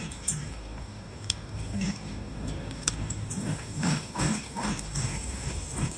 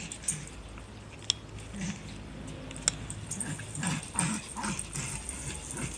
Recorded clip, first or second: second